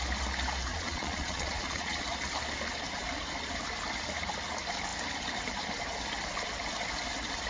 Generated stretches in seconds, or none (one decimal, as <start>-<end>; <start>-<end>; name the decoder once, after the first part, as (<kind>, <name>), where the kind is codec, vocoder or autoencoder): 0.7-2.0 (vocoder, Vocos)